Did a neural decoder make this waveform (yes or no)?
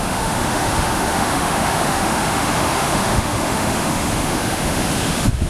yes